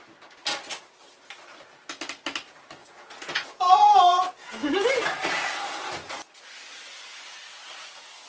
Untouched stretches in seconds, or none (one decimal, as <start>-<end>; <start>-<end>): 0.0-2.8; 4.9-8.3